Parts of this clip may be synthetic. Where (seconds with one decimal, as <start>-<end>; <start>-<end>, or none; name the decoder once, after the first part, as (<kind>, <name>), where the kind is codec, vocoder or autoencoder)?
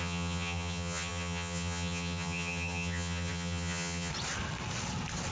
0.0-4.1 (vocoder, HiFi-GAN)